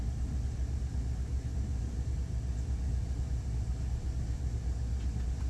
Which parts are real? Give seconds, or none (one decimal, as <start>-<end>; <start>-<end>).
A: 0.0-5.5